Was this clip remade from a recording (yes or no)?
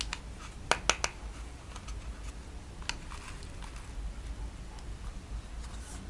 no